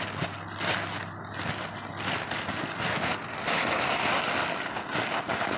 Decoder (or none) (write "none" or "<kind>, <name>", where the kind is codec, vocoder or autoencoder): none